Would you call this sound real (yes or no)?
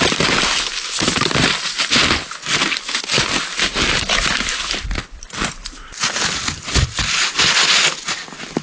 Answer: yes